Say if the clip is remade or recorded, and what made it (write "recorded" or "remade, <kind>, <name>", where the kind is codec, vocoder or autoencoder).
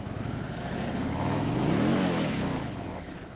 remade, autoencoder, DAC-VAE